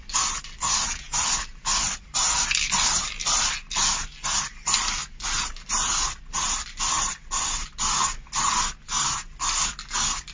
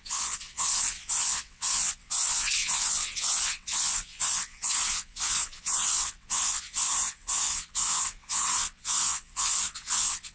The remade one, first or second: second